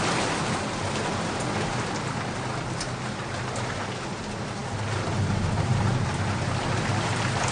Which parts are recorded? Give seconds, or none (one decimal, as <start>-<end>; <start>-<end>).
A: 0.0-7.5